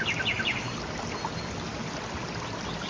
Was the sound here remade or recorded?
recorded